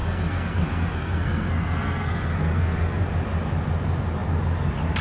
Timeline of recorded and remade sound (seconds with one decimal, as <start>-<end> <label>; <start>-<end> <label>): 0.0-3.0 remade; 3.0-5.0 recorded